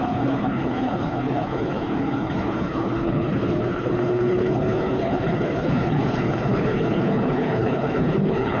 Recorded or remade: remade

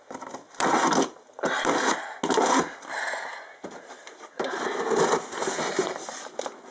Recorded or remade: recorded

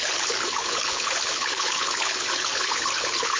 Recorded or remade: remade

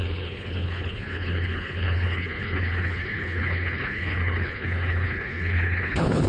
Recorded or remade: remade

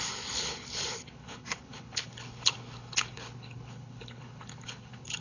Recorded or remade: remade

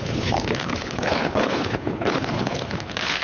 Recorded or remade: remade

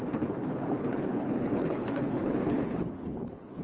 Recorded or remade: remade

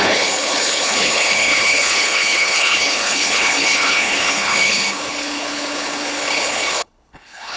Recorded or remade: remade